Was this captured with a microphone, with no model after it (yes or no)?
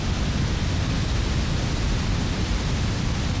yes